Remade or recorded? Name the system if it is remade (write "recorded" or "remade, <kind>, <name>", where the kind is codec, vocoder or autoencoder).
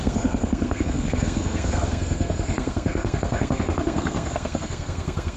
remade, codec, SNAC